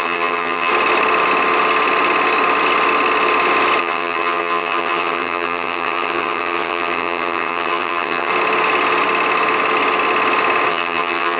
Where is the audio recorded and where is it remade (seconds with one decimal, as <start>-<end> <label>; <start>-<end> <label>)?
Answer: 0.0-0.7 remade; 0.7-3.8 recorded; 3.8-8.3 remade; 8.3-10.7 recorded; 10.7-11.4 remade